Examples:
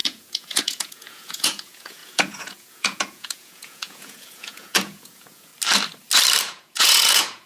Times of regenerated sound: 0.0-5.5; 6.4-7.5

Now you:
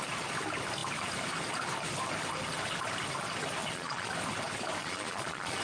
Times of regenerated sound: 3.6-4.1; 4.8-5.6

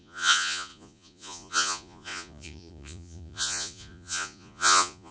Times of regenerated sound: 0.0-5.1

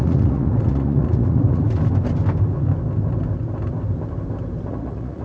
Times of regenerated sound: 0.0-1.6; 4.7-5.2

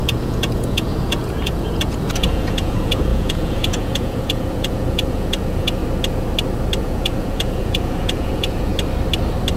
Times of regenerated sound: 0.0-5.8; 6.8-8.7